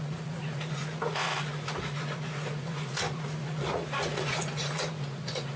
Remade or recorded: remade